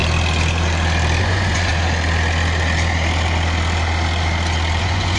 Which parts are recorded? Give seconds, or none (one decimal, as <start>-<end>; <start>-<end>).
0.0-1.2; 1.7-4.8

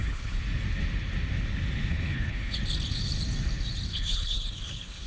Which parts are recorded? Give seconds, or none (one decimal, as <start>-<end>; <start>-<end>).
0.4-1.9; 2.6-3.9

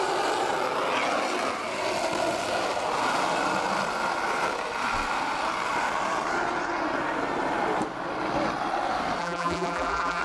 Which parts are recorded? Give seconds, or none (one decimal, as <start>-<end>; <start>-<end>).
0.0-9.2

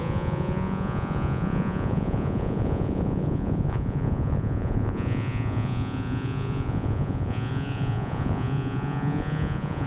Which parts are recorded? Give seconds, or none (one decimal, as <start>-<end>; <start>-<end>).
none

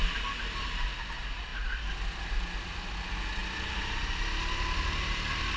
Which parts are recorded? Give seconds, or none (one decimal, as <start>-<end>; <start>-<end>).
0.0-5.6

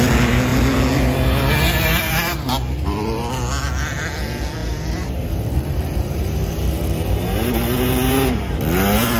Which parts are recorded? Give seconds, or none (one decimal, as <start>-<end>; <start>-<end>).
0.0-4.6; 8.6-9.2

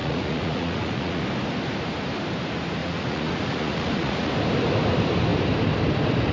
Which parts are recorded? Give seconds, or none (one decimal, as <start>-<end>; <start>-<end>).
1.2-2.8; 4.3-6.3